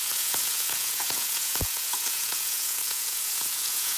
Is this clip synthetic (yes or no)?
yes